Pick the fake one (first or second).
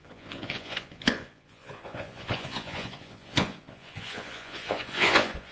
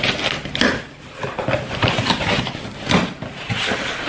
first